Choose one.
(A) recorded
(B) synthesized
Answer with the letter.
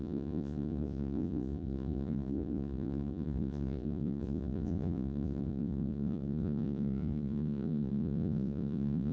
B